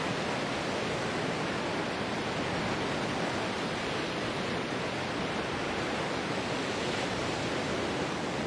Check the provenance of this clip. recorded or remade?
recorded